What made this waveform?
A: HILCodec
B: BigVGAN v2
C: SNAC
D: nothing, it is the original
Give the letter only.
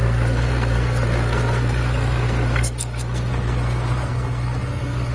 C